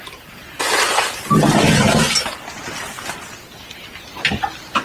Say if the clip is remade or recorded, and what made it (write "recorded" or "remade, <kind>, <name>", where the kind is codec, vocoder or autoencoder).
recorded